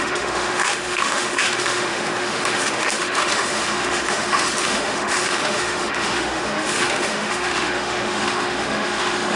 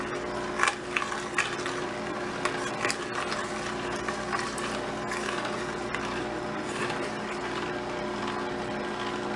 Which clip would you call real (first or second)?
second